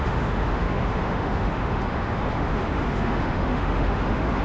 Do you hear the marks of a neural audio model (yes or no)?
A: yes